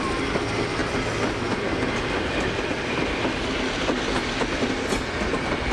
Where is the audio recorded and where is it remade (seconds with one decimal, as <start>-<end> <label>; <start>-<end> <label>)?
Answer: 0.0-5.7 recorded